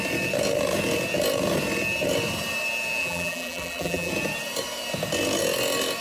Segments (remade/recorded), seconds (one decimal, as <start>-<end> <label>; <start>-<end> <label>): 0.0-3.0 recorded; 3.0-4.1 remade; 4.1-6.0 recorded